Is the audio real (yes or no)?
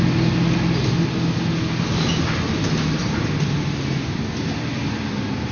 yes